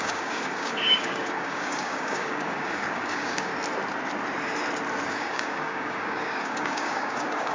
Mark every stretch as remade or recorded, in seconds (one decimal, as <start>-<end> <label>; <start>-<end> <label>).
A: 0.0-3.5 remade; 3.5-5.1 recorded; 5.1-7.5 remade